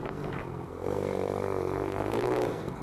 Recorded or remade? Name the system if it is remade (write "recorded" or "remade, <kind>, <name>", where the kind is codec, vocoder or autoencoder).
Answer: remade, codec, SNAC